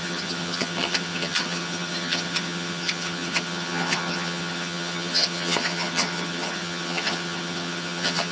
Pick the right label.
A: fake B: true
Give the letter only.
A